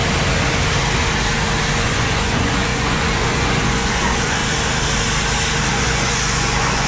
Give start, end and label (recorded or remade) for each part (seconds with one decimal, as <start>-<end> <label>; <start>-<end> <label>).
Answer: 0.0-1.7 recorded; 1.7-4.4 remade; 4.4-5.7 recorded; 5.7-6.9 remade